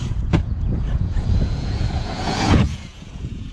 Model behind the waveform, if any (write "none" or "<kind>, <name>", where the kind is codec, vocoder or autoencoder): vocoder, Vocos